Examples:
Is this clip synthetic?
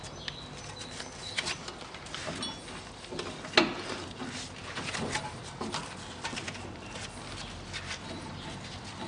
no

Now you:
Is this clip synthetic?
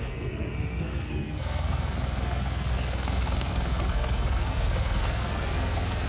yes